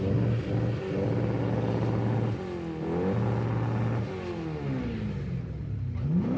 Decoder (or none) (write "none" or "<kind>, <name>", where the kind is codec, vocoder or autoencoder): none